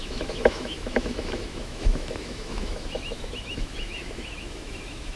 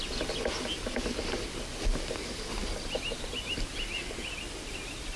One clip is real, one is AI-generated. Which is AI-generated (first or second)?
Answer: first